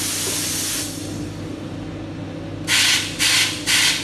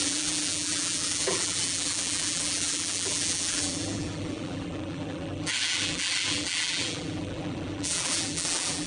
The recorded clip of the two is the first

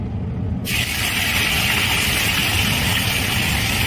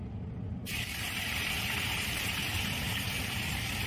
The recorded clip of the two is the first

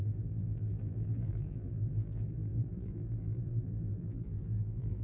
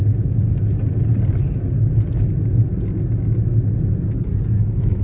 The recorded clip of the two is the second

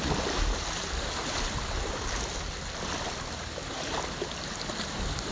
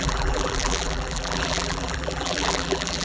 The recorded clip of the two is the first